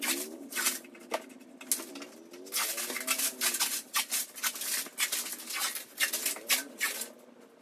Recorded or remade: recorded